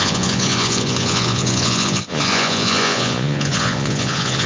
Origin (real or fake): fake